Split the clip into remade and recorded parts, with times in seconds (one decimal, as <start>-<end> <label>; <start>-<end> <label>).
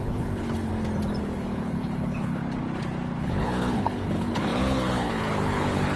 0.0-0.7 remade; 0.7-1.2 recorded; 1.2-2.4 remade; 2.4-3.2 recorded; 3.2-6.0 remade